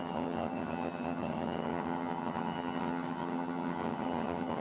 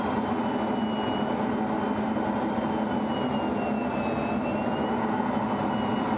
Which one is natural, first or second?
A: second